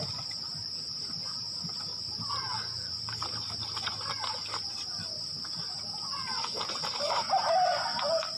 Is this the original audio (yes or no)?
yes